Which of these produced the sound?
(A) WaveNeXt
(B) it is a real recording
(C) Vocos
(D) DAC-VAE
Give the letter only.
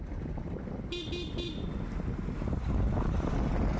B